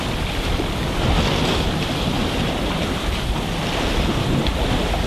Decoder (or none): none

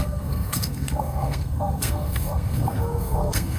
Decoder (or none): codec, SNAC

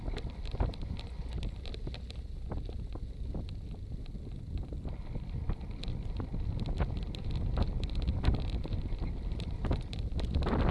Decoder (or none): none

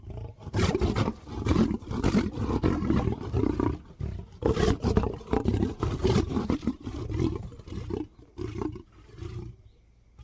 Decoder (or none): none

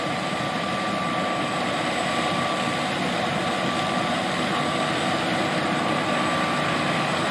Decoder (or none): none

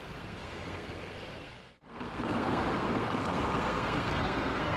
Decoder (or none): codec, SNAC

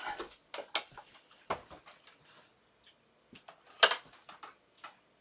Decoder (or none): none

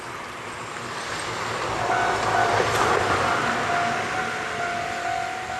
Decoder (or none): none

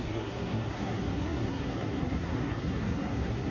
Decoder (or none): codec, SNAC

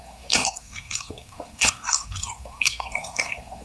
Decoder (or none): codec, SNAC